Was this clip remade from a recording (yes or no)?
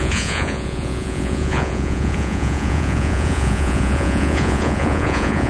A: yes